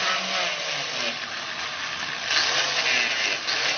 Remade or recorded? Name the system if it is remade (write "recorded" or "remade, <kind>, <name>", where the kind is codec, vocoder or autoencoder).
recorded